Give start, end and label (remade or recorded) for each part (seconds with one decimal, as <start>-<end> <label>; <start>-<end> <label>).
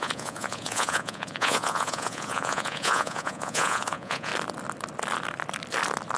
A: 0.0-4.3 remade; 4.3-6.2 recorded